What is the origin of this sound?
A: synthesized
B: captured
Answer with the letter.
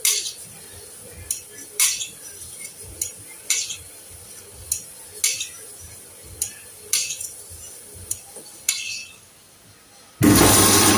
B